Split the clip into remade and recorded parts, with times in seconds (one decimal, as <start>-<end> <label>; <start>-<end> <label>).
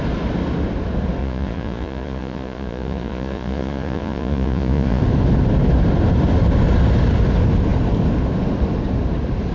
0.0-1.2 recorded; 1.2-5.0 remade; 5.0-9.5 recorded